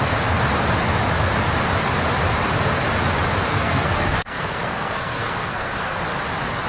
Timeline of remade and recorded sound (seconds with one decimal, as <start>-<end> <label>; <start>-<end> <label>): 0.0-3.5 recorded; 3.5-6.0 remade; 6.0-6.7 recorded